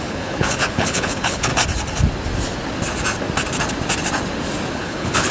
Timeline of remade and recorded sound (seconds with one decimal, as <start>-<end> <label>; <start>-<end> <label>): 0.0-1.5 remade; 1.5-4.7 recorded; 4.7-5.3 remade